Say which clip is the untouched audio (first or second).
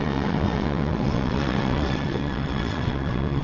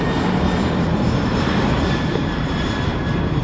second